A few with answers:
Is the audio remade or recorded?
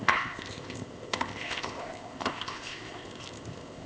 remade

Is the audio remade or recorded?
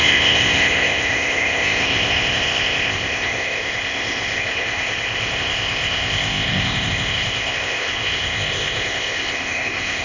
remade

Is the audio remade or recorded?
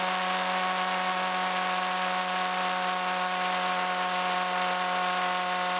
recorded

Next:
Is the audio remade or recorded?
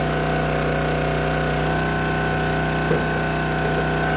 recorded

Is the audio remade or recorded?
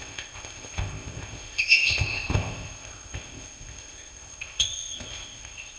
remade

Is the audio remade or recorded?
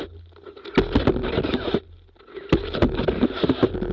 recorded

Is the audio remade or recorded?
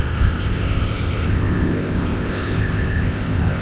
remade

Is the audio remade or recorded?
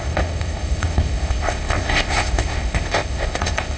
remade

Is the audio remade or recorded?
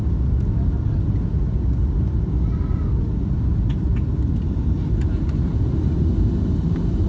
recorded